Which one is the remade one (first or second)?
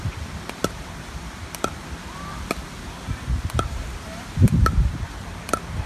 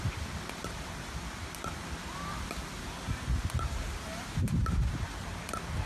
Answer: first